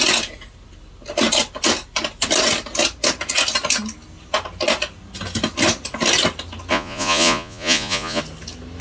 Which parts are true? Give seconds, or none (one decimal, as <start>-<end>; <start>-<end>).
0.0-6.7; 8.2-8.8